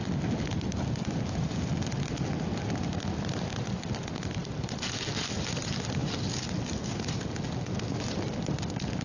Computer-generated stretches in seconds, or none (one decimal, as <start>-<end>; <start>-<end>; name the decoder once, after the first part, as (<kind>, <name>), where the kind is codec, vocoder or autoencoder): none